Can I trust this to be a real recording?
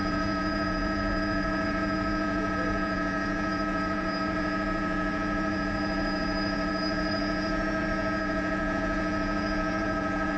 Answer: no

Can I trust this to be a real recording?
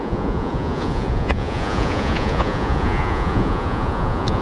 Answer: no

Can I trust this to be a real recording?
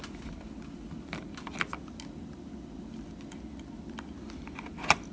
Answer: yes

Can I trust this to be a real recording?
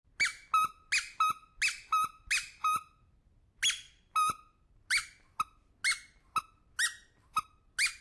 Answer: yes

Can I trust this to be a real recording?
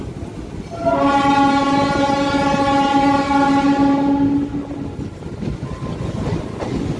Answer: yes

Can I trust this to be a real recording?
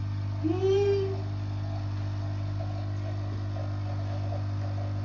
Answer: yes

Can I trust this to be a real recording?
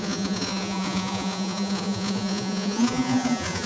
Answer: no